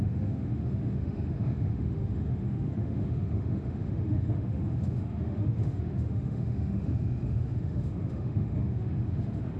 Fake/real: fake